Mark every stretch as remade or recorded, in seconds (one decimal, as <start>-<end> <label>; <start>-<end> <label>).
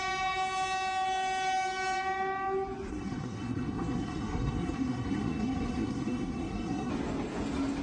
0.0-2.9 recorded; 2.9-6.9 remade; 6.9-7.8 recorded